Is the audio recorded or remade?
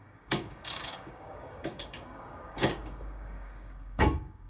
remade